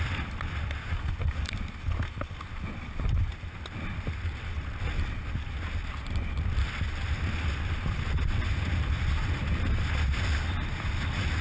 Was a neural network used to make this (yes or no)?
no